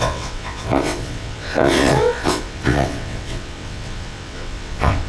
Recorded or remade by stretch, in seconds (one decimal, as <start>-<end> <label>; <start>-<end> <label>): 0.0-5.1 remade